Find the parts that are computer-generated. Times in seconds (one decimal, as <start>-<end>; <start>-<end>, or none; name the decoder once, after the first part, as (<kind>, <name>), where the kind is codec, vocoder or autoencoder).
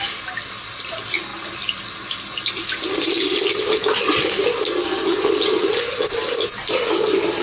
none